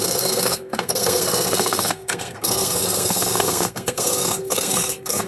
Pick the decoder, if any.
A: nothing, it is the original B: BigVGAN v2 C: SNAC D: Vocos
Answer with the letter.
C